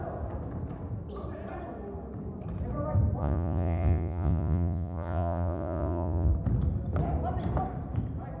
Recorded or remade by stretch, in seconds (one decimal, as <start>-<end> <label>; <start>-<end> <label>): 0.0-3.2 recorded; 3.2-6.3 remade; 6.3-8.4 recorded